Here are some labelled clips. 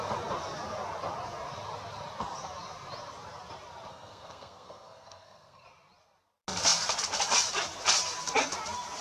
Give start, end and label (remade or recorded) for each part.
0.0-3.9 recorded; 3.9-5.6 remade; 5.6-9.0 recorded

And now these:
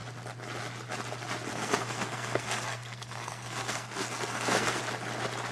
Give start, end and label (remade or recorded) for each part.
0.0-1.5 recorded; 1.5-4.8 remade; 4.8-5.5 recorded

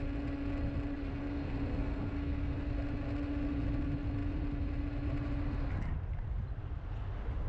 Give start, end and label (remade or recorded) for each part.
0.0-1.1 recorded; 1.1-2.7 remade; 2.7-7.5 recorded

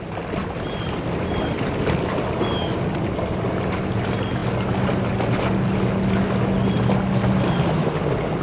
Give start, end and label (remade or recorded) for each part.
0.0-8.4 recorded

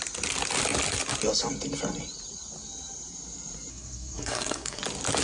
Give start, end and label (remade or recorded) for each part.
0.0-3.7 recorded; 3.7-4.8 remade; 4.8-5.2 recorded

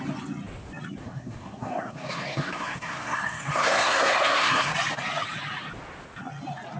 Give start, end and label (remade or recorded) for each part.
0.0-1.0 recorded; 1.0-4.7 remade; 4.7-6.8 recorded

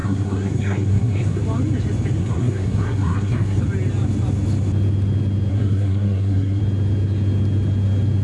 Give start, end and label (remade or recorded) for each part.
0.0-1.4 remade; 1.4-2.2 recorded; 2.2-3.6 remade; 3.6-5.5 recorded; 5.5-6.6 remade; 6.6-8.2 recorded

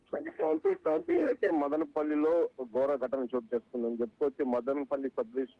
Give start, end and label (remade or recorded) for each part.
0.0-1.5 remade; 1.5-5.6 recorded